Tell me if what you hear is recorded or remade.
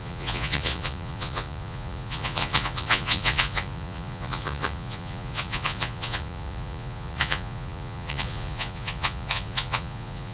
remade